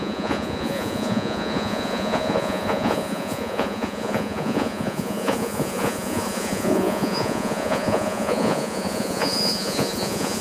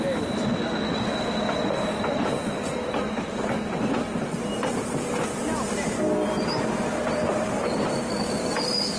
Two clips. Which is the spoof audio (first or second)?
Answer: first